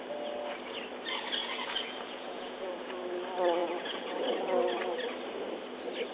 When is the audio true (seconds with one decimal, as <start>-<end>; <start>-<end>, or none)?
0.0-1.4; 2.9-3.6; 4.2-6.1